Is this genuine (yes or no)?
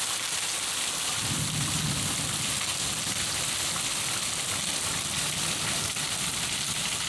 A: yes